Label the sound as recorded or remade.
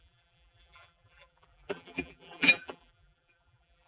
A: remade